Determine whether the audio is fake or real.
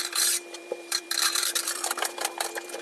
fake